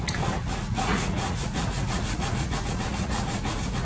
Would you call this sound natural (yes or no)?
no